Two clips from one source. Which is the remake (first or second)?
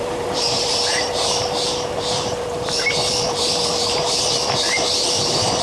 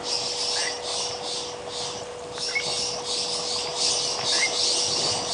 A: first